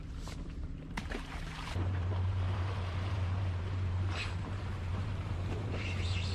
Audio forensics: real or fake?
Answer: fake